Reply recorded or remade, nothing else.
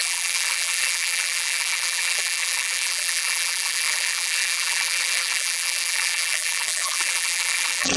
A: remade